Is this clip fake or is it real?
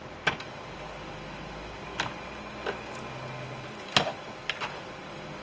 real